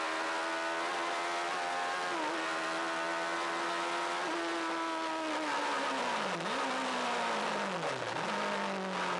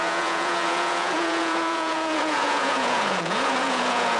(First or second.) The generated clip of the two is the second